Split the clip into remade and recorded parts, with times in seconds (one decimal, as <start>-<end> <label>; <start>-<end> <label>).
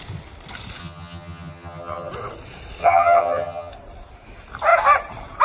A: 0.0-0.8 recorded; 0.8-2.1 remade; 2.1-2.8 recorded; 2.8-3.7 remade; 3.7-5.4 recorded